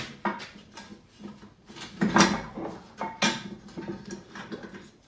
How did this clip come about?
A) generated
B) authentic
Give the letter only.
B